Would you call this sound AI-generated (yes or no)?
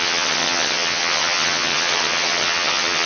yes